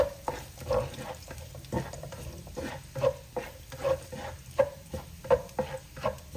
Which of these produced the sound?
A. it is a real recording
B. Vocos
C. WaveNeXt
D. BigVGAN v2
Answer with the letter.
A